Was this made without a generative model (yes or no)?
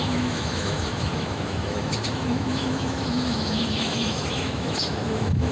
no